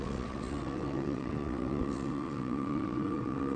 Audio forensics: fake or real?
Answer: fake